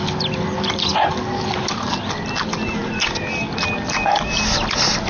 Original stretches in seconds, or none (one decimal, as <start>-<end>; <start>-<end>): 0.0-0.9; 1.5-5.1

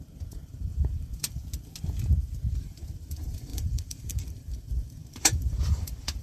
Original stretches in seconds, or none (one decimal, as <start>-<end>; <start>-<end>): 1.4-2.5

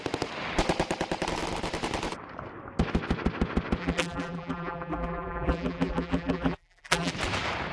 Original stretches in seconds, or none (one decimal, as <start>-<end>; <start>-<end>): 0.0-3.8; 7.1-7.7